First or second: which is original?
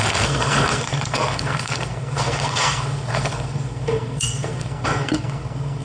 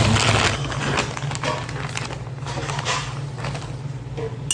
second